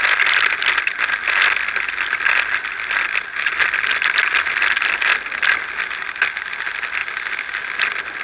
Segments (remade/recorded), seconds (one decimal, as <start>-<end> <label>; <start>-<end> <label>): 0.0-8.2 recorded